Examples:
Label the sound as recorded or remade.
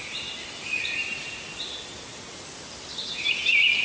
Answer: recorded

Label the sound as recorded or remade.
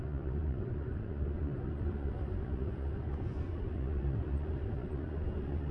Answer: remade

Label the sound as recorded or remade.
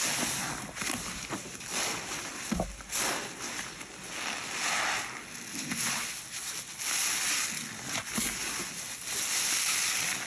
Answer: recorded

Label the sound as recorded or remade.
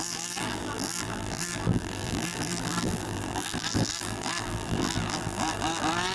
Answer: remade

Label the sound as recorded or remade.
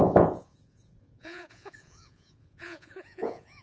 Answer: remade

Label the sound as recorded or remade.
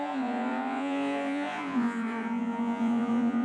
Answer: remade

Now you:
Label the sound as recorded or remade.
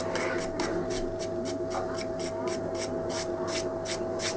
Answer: recorded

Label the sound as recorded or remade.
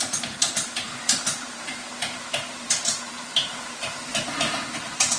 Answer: remade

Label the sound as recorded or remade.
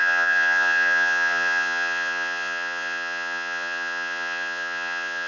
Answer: remade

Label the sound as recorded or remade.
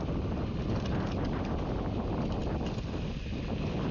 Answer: recorded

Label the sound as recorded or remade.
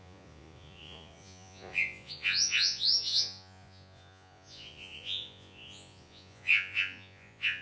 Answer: remade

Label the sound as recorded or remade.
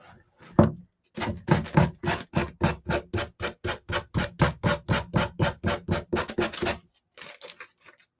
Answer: recorded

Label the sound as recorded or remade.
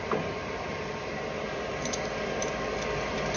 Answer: recorded